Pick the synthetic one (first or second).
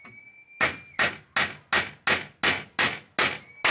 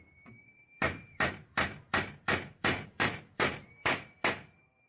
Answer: second